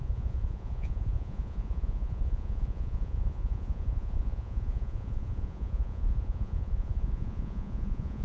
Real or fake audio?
fake